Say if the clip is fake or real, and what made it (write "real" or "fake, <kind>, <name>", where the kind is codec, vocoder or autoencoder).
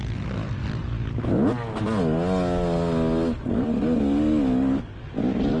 real